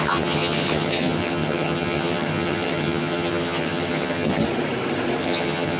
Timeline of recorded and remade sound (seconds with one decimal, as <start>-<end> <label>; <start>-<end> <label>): 0.0-4.4 remade; 4.4-5.2 recorded; 5.2-5.8 remade